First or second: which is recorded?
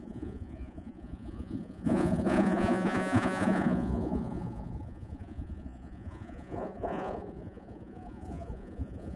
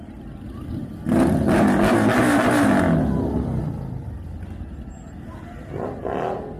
second